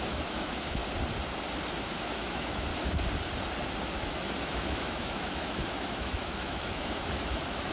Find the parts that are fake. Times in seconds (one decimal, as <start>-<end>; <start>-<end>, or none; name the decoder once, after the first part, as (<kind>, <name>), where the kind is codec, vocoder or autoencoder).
0.0-0.8 (autoencoder, DAC-VAE); 1.8-2.7; 3.8-7.7